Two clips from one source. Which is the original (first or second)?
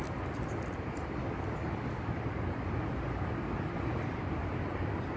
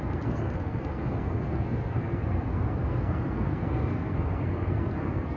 first